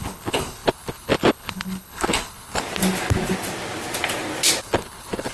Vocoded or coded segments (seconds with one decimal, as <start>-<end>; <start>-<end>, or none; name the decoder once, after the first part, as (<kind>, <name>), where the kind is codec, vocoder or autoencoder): 0.0-2.6 (codec, HILCodec); 4.6-5.3